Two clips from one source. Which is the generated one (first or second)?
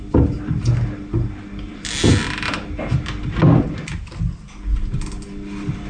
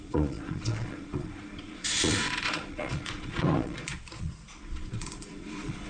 second